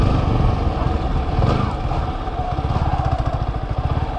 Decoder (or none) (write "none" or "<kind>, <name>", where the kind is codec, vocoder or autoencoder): none